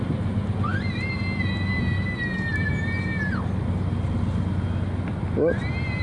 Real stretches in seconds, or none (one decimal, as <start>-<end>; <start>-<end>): 0.0-6.0